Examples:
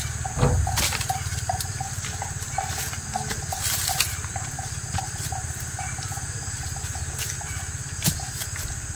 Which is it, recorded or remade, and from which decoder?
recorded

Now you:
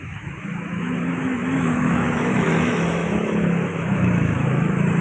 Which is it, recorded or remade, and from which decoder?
remade, autoencoder, DAC-VAE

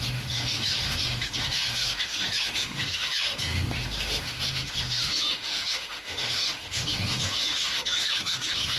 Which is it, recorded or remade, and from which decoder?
remade, autoencoder, DAC-VAE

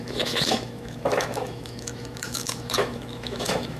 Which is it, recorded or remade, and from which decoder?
remade, autoencoder, DAC-VAE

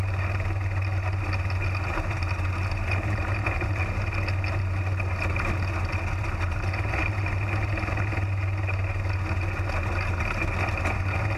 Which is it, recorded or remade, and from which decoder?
recorded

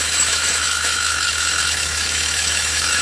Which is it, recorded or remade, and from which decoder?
remade, autoencoder, DAC-VAE